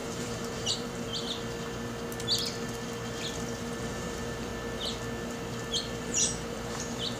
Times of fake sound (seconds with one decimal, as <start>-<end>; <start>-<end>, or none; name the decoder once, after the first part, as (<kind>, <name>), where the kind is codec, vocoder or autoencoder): 0.0-1.1 (vocoder, BigVGAN v2); 3.8-4.5; 6.0-7.2